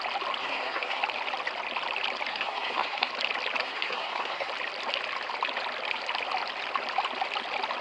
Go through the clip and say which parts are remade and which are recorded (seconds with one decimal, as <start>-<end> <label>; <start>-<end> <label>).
0.0-0.4 recorded; 0.4-1.0 remade; 1.0-2.3 recorded; 2.3-3.1 remade; 3.1-3.6 recorded; 3.6-4.5 remade; 4.5-7.8 recorded